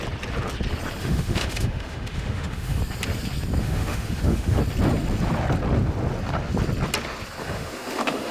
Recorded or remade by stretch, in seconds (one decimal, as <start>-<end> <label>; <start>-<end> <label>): 0.0-1.0 recorded; 1.0-2.8 remade; 2.8-3.6 recorded; 3.6-4.6 remade; 4.6-7.4 recorded; 7.4-8.3 remade